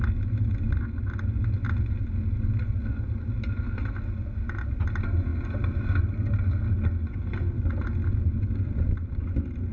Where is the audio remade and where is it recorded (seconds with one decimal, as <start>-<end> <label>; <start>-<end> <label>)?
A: 0.0-9.7 recorded